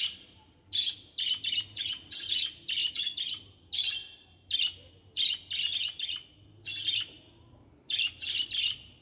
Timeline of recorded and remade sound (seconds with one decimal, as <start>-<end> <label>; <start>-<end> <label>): 0.0-6.7 recorded; 6.7-8.5 remade; 8.5-9.0 recorded